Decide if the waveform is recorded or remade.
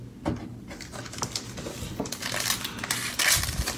recorded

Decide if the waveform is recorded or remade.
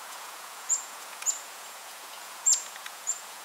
remade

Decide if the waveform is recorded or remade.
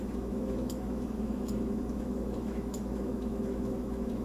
remade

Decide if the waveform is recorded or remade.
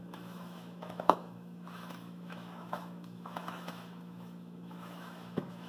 remade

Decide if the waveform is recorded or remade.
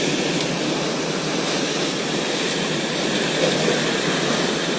recorded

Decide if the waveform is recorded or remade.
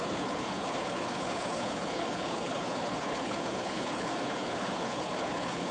remade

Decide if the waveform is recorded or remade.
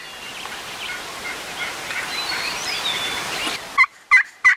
recorded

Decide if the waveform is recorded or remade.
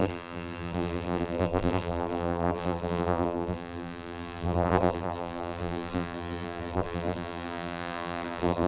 remade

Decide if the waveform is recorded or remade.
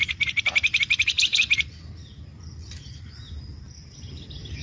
remade